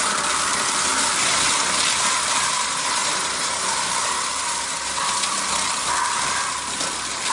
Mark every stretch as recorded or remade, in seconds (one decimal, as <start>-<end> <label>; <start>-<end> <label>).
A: 0.0-7.3 recorded